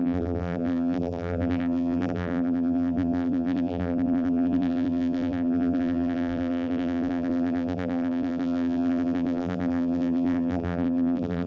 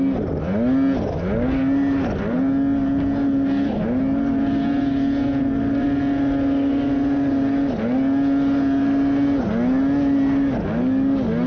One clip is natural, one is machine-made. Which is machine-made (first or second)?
first